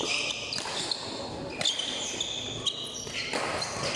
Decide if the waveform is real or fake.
real